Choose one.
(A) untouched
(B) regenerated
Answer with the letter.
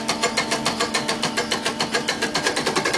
A